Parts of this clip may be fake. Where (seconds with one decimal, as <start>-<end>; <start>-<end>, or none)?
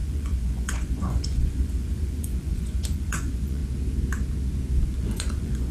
0.0-3.6; 5.0-5.7